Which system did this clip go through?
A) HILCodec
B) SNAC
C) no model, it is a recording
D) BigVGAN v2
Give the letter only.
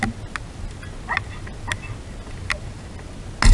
C